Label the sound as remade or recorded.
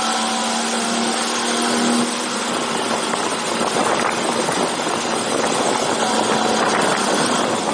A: recorded